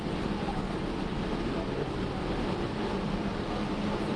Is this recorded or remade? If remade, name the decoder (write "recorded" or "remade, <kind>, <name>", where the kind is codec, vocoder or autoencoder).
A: recorded